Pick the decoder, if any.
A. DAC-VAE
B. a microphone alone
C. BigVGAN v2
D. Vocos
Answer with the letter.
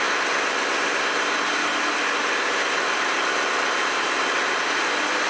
B